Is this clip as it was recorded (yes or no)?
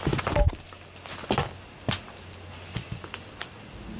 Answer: yes